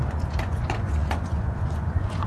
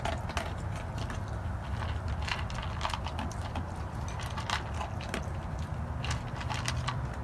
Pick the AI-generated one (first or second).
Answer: first